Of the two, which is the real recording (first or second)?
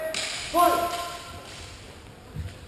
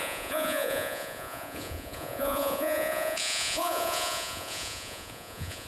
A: first